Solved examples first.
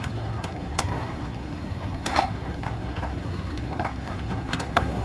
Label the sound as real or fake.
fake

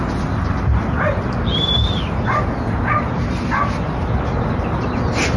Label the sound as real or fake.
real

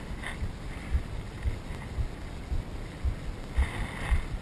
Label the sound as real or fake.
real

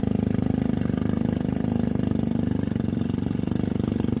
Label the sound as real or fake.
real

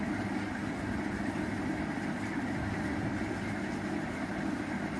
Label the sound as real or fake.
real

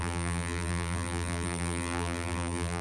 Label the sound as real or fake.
fake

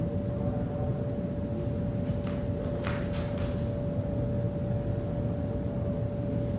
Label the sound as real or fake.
real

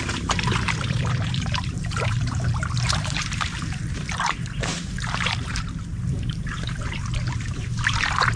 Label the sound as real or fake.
fake